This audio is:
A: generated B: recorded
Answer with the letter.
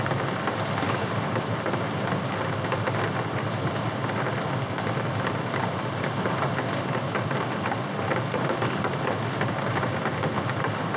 B